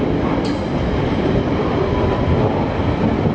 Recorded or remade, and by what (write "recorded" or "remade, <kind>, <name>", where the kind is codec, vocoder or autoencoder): recorded